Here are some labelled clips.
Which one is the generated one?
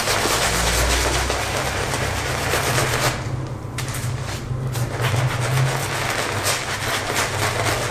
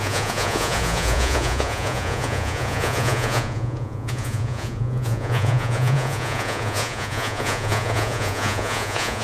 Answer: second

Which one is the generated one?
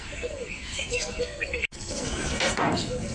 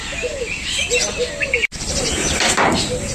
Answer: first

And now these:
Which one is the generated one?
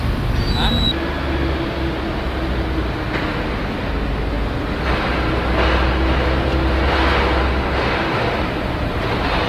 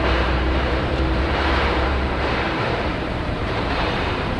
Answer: second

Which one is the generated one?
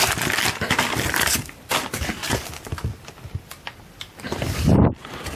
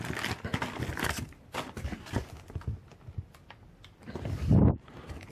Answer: first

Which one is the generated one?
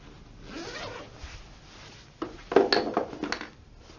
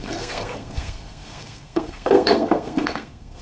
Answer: second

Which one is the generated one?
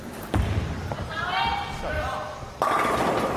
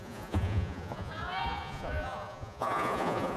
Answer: second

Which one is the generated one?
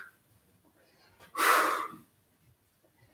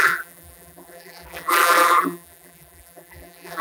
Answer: second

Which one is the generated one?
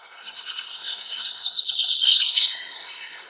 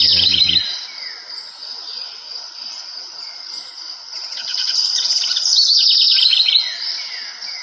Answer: first